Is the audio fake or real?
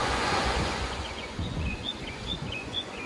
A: fake